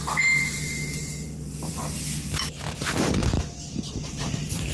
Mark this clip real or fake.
fake